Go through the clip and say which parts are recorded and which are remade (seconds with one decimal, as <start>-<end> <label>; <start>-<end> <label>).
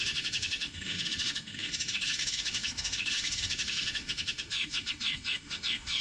0.0-6.0 remade